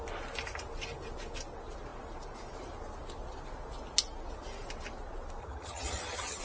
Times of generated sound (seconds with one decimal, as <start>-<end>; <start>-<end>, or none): 5.4-6.4